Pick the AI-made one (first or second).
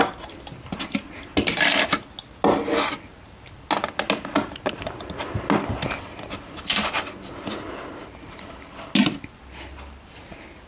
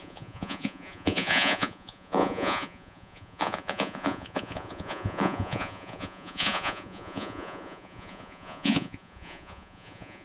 second